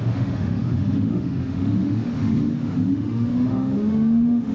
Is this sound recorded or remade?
remade